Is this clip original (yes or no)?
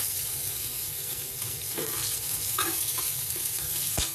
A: no